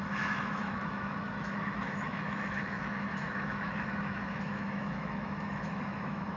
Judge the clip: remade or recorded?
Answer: remade